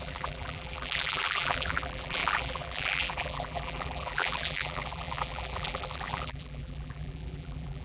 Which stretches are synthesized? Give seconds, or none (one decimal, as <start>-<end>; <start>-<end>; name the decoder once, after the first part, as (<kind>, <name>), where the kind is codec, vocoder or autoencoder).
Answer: 0.0-7.8 (vocoder, BigVGAN v2)